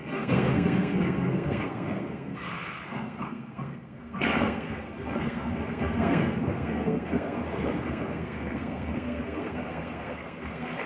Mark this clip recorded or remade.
remade